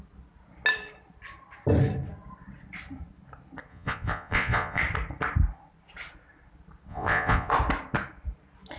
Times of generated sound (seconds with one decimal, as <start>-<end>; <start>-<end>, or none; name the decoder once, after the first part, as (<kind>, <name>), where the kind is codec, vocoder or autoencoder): 3.7-4.8 (vocoder, Vocos); 6.9-7.5